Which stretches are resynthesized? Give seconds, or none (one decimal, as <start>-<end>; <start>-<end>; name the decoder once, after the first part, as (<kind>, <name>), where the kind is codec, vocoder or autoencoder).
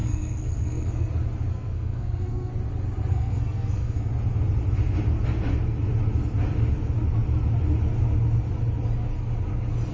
0.0-1.1 (codec, SNAC); 1.5-2.5; 3.1-4.1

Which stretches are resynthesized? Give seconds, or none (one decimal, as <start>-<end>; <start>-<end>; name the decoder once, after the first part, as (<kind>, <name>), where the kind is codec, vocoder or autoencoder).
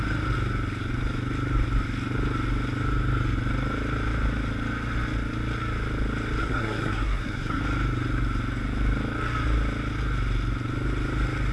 6.4-7.6 (codec, SNAC)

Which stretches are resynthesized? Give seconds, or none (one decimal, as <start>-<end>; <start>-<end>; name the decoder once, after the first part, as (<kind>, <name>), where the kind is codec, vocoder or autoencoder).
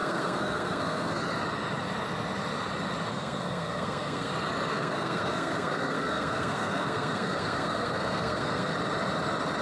0.0-1.2 (codec, SNAC); 3.1-4.3; 4.7-8.7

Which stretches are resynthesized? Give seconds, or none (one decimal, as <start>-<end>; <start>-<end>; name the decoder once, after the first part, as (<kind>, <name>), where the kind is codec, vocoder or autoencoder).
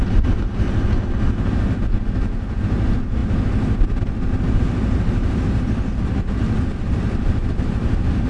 none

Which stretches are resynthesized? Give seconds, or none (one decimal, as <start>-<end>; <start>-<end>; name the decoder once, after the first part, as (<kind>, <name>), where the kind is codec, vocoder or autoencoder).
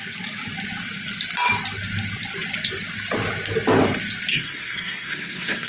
4.3-5.7 (codec, SNAC)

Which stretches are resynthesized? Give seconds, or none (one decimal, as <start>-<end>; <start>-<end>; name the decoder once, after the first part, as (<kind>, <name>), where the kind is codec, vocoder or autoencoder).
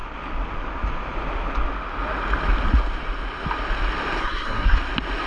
4.2-4.8 (codec, SNAC)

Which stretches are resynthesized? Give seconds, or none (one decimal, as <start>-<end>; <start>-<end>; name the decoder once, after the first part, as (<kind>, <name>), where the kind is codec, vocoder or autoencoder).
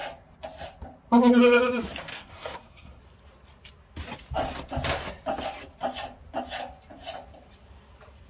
2.1-3.0 (codec, SNAC)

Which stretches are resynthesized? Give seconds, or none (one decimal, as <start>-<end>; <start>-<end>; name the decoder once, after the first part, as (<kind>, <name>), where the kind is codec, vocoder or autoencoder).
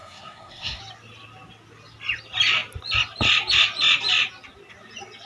0.0-0.8 (codec, SNAC)